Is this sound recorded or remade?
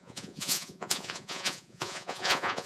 remade